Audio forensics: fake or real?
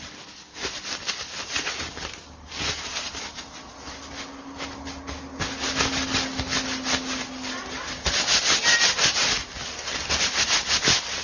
real